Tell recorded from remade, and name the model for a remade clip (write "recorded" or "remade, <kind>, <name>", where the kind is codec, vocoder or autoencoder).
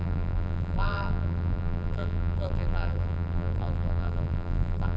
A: remade, vocoder, BigVGAN v2